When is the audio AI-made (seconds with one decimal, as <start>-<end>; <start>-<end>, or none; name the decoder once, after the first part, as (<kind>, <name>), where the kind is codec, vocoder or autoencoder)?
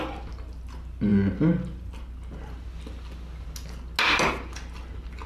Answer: none